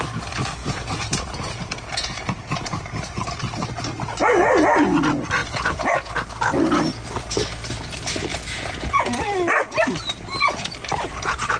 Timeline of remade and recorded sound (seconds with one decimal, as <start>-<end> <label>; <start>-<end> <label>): 0.0-0.6 recorded; 0.6-2.8 remade; 2.8-5.4 recorded; 5.4-6.1 remade; 6.1-8.3 recorded; 8.3-9.2 remade; 9.2-11.6 recorded